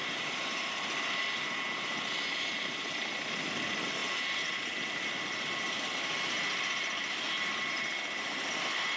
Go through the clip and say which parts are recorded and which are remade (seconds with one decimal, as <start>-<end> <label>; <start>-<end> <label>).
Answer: 0.0-9.0 recorded